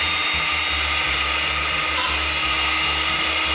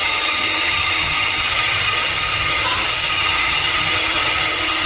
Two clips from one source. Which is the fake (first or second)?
second